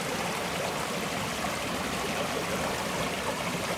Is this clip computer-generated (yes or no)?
no